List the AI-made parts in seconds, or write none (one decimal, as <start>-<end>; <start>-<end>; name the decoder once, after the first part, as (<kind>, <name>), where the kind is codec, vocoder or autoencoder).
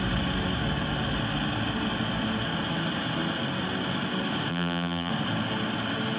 4.5-5.1 (vocoder, BigVGAN v2)